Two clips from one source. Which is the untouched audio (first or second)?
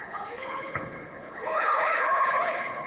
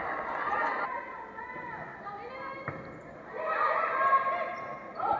second